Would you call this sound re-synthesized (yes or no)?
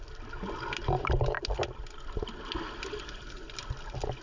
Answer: no